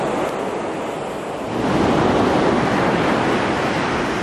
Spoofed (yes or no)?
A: no